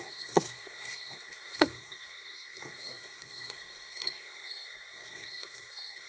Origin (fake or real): fake